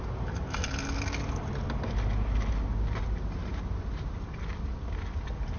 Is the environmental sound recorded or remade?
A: recorded